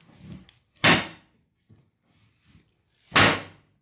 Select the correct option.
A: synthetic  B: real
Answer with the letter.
B